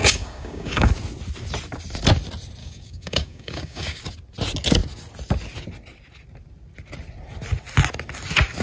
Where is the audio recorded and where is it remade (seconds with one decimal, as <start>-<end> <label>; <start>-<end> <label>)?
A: 0.0-0.9 remade; 0.9-2.6 recorded; 2.6-4.0 remade; 4.0-8.6 recorded